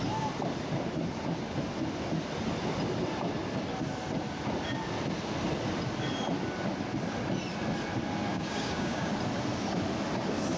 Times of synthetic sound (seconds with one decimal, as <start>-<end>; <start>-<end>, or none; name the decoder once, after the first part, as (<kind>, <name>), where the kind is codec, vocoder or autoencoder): 8.3-9.1 (codec, DAC)